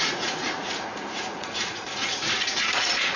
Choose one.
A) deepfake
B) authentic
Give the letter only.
A